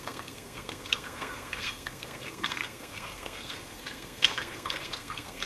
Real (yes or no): no